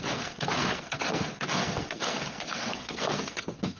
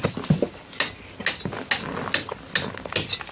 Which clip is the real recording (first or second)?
second